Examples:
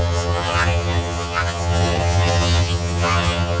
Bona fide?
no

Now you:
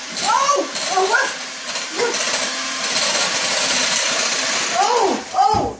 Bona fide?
yes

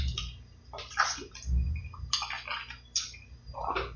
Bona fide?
yes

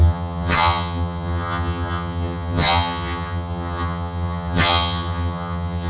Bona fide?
no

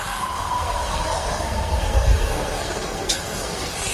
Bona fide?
no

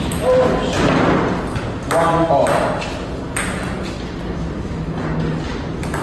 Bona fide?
yes